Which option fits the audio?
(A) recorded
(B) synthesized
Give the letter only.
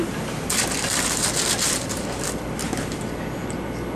A